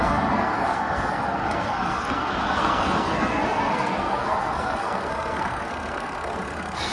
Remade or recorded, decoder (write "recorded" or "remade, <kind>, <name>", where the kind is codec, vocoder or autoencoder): remade, codec, SNAC